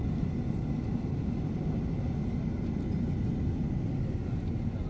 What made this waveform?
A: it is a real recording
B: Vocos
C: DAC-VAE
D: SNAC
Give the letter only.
A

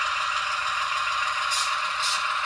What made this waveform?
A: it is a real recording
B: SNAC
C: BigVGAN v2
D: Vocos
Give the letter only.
A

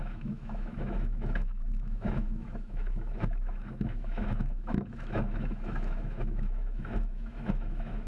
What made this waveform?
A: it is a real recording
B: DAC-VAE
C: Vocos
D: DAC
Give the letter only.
B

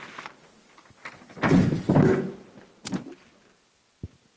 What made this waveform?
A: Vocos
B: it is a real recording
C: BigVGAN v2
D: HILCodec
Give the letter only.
B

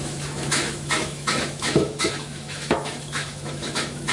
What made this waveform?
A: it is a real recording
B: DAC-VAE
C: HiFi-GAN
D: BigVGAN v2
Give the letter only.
B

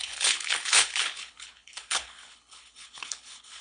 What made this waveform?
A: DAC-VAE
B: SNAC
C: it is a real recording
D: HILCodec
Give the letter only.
D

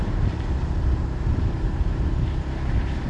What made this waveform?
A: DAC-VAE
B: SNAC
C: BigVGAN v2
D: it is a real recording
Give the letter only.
C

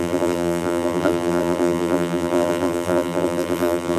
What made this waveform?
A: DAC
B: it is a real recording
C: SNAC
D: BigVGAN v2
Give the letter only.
D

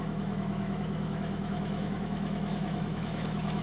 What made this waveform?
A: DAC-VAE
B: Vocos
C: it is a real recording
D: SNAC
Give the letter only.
A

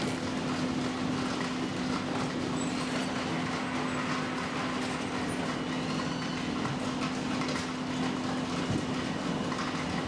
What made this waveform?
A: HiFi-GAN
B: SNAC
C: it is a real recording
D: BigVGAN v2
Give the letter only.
C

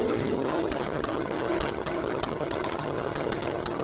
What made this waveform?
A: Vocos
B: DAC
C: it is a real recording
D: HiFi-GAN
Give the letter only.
D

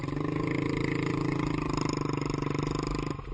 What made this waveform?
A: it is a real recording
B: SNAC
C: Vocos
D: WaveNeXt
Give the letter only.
A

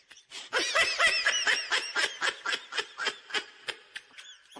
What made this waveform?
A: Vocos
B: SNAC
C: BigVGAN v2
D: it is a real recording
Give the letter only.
D